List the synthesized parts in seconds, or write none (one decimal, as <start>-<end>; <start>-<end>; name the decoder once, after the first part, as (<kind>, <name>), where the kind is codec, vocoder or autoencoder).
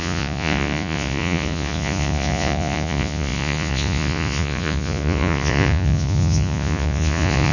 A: 0.0-7.5 (vocoder, Vocos)